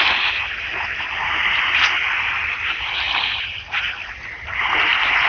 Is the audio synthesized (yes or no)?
no